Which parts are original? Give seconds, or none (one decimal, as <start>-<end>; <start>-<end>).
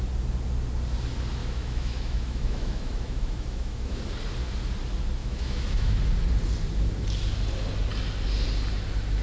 0.0-1.4; 4.0-5.2; 6.0-9.2